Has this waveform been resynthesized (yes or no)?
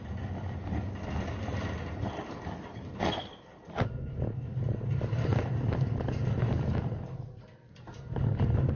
no